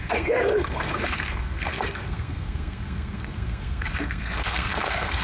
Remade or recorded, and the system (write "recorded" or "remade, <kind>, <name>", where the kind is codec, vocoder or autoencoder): remade, codec, SNAC